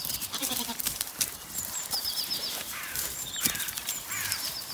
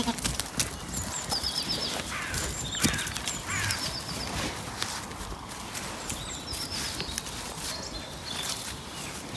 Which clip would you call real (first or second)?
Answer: second